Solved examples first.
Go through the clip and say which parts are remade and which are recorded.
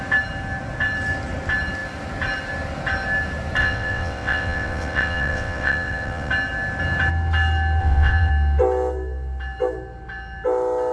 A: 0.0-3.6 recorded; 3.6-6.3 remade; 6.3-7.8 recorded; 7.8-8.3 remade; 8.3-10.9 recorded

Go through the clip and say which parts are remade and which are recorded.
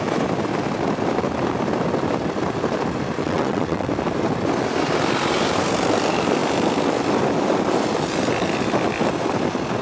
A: 0.0-3.2 recorded; 3.2-3.9 remade; 3.9-9.8 recorded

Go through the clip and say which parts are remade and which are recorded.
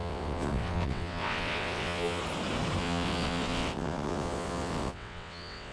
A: 0.0-2.2 remade; 2.2-2.8 recorded; 2.8-5.7 remade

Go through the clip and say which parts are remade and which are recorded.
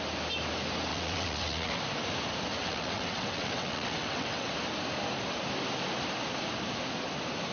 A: 0.0-0.9 recorded; 0.9-1.8 remade; 1.8-2.6 recorded; 2.6-4.5 remade; 4.5-7.5 recorded